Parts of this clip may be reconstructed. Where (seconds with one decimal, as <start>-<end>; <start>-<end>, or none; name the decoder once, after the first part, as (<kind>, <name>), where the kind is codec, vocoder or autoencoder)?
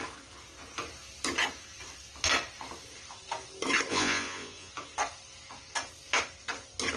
3.9-4.7 (vocoder, Vocos)